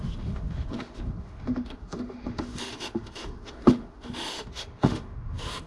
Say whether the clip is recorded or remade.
remade